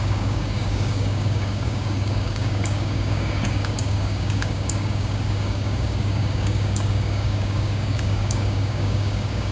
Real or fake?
fake